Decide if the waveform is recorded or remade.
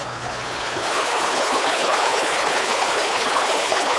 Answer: remade